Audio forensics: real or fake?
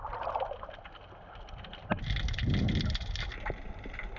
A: real